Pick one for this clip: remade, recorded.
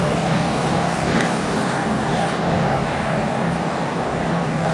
remade